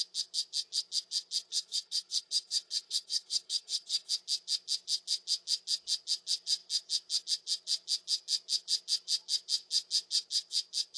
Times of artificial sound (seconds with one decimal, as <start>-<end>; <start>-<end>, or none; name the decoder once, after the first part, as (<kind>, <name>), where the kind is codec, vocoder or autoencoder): 1.5-4.1 (codec, HILCodec)